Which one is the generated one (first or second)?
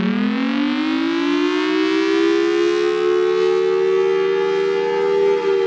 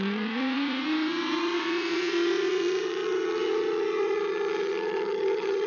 second